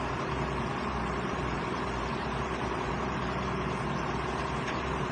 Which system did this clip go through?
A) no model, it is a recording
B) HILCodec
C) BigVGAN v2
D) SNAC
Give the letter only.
C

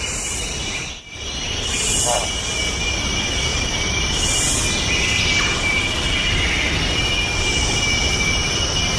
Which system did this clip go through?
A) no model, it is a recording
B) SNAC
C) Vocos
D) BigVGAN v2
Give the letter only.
A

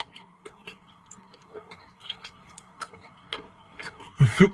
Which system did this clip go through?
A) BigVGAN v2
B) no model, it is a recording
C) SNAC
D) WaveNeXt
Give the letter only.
C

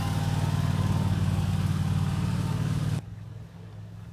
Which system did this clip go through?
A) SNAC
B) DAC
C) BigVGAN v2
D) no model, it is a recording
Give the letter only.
B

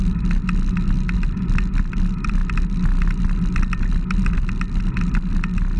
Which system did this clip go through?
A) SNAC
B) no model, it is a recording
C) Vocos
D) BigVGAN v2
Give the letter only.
B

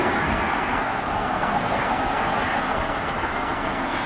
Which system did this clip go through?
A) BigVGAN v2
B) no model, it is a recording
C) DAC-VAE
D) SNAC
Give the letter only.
D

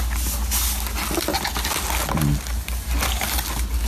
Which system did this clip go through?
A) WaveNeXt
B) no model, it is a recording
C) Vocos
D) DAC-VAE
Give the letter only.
B